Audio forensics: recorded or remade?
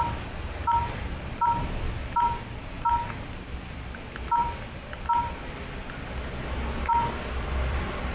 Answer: remade